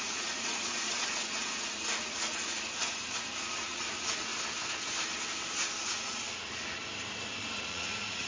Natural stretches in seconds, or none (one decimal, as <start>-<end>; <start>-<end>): 4.3-5.8; 6.8-7.6